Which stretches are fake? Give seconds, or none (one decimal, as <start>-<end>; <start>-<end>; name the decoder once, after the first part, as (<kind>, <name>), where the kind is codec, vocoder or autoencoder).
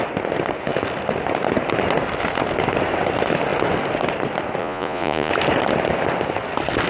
4.6-5.3 (vocoder, Vocos)